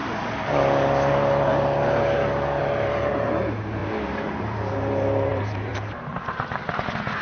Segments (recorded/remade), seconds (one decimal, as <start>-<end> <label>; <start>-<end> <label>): 0.0-2.6 recorded; 2.6-7.2 remade